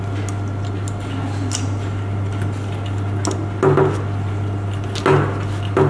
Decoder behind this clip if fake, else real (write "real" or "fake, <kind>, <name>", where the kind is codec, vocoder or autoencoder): real